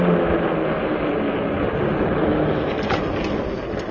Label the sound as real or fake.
real